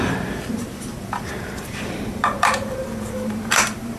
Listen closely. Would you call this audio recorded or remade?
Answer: remade